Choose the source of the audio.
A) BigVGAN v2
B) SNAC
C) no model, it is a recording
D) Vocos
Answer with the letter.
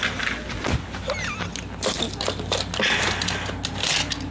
C